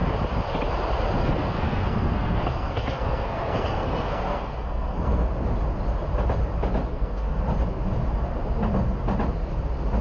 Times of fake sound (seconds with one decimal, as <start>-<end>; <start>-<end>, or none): 1.2-5.3; 6.9-7.4

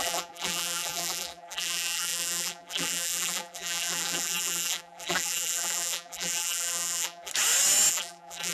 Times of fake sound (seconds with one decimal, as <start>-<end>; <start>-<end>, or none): 0.0-7.3; 7.9-8.5

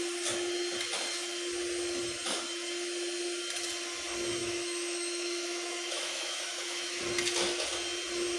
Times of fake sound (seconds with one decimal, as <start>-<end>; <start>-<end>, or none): 4.4-7.0